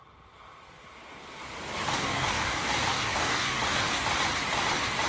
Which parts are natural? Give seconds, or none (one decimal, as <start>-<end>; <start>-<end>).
0.0-2.1; 4.0-5.1